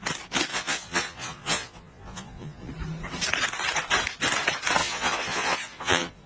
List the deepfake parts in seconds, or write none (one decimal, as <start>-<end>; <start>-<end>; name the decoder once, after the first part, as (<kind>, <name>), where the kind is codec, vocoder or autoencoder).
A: 0.5-2.7 (vocoder, Vocos); 4.8-6.3